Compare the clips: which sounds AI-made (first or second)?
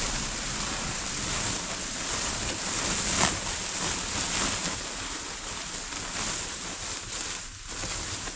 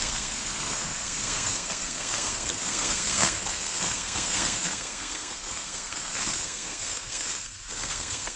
second